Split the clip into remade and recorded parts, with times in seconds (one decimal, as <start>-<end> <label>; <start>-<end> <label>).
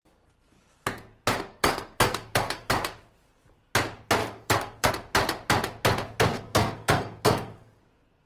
0.0-1.5 recorded; 1.5-2.7 remade; 2.7-4.2 recorded; 4.2-4.9 remade; 4.9-6.3 recorded; 6.3-7.8 remade; 7.8-8.3 recorded